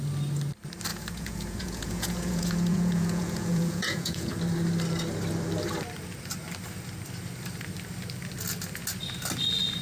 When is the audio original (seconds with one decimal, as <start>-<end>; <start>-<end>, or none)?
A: 0.0-0.9; 4.4-9.8